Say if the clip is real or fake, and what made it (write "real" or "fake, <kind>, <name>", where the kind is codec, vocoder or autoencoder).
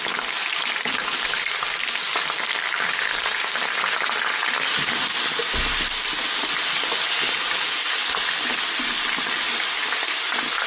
real